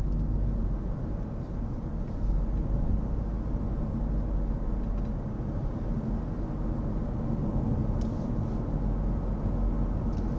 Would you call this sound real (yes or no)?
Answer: yes